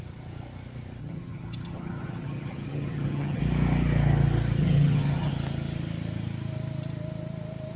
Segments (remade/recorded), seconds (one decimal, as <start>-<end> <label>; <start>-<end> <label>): 0.0-1.0 recorded; 1.0-3.4 remade; 3.4-4.6 recorded; 4.6-5.3 remade; 5.3-7.8 recorded